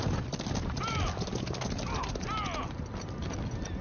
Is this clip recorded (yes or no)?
yes